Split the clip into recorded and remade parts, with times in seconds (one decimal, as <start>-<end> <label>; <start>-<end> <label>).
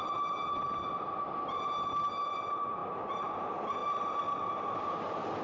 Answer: 0.0-5.4 recorded